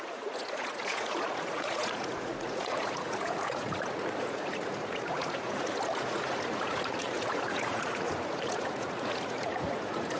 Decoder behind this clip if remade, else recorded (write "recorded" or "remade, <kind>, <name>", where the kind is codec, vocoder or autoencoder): remade, vocoder, Vocos